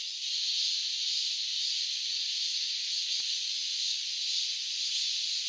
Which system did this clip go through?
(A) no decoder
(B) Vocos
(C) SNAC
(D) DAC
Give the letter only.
A